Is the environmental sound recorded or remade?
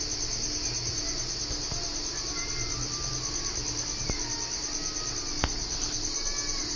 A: recorded